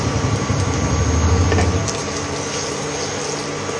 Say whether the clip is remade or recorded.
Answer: recorded